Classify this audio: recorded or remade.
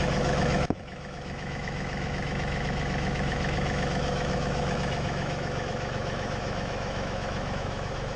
remade